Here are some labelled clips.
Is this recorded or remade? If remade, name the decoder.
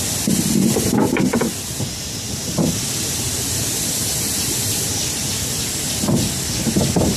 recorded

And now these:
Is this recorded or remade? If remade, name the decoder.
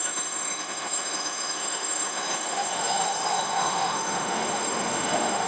remade, autoencoder, DAC-VAE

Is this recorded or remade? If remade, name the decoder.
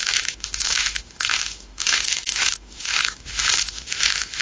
remade, autoencoder, DAC-VAE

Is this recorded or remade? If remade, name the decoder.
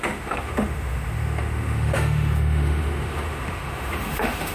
remade, autoencoder, DAC-VAE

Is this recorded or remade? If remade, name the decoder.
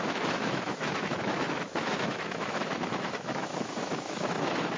remade, autoencoder, DAC-VAE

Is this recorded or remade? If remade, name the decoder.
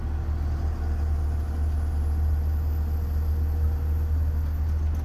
recorded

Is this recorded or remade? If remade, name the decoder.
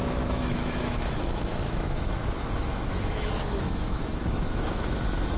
remade, autoencoder, DAC-VAE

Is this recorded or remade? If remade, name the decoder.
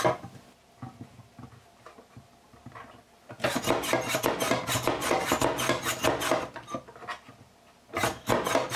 recorded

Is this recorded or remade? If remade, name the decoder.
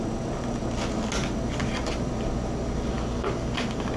recorded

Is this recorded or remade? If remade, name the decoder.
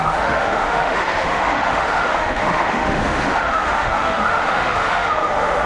remade, autoencoder, DAC-VAE